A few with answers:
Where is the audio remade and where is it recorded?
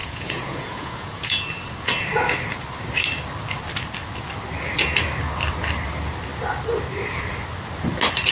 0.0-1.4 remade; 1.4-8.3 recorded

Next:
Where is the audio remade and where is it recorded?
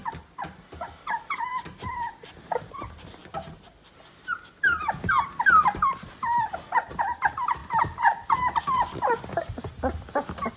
0.0-10.6 recorded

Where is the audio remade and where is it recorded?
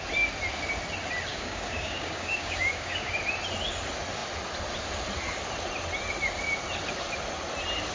0.0-1.3 recorded; 1.3-3.2 remade; 3.2-7.9 recorded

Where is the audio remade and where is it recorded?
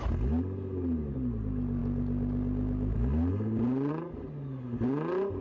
0.0-5.4 recorded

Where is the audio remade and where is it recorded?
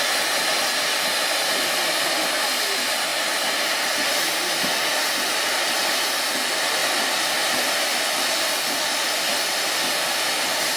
0.0-4.9 recorded; 4.9-5.5 remade; 5.5-10.8 recorded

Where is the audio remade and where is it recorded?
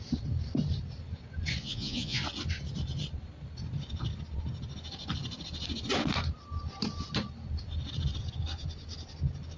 0.0-1.6 recorded; 1.6-2.2 remade; 2.2-9.6 recorded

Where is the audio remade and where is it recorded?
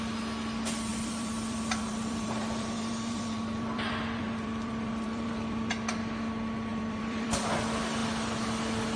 0.0-0.9 recorded; 0.9-5.7 remade; 5.7-6.7 recorded; 6.7-7.5 remade; 7.5-9.0 recorded